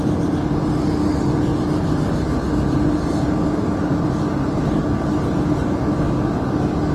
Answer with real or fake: real